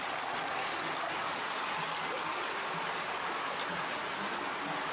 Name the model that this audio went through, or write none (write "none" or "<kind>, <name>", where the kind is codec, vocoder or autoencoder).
none